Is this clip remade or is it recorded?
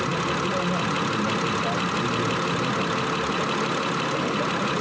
recorded